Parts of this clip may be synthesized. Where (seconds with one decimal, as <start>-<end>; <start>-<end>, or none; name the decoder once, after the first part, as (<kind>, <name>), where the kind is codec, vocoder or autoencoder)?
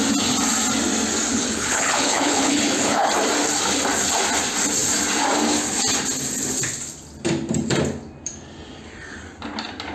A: 1.3-3.1 (codec, HILCodec)